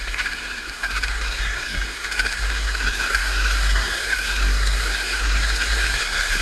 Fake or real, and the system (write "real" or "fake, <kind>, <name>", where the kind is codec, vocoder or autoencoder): fake, codec, SNAC